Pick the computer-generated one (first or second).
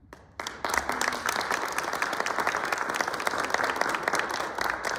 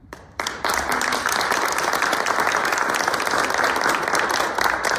second